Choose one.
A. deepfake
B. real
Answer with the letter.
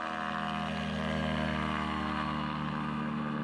B